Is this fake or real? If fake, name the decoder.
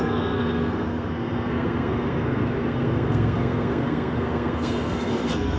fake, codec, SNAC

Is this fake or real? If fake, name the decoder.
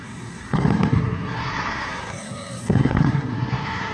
fake, codec, SNAC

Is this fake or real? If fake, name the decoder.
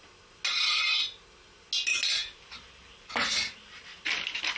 real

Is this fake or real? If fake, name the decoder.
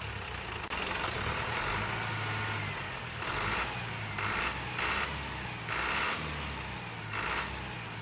real